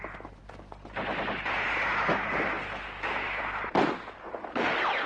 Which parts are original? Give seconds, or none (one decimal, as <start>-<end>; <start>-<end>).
0.0-5.1